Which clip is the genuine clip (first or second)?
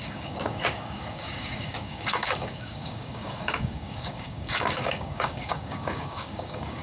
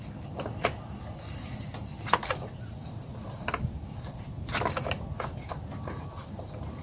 second